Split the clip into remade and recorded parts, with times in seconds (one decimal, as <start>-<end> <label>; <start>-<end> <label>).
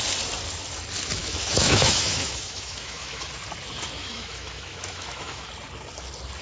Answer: 0.0-1.2 recorded; 1.2-3.3 remade; 3.3-4.0 recorded; 4.0-5.5 remade; 5.5-6.4 recorded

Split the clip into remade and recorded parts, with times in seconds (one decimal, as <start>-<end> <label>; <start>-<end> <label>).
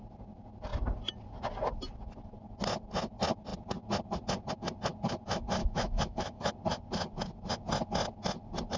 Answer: 0.0-5.6 recorded; 5.6-6.5 remade; 6.5-8.8 recorded